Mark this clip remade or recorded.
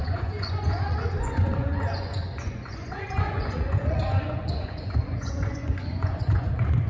remade